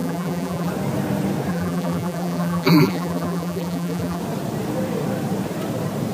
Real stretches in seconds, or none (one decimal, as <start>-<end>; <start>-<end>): 0.7-1.5; 4.2-6.1